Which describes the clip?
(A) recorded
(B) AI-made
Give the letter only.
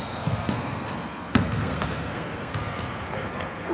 B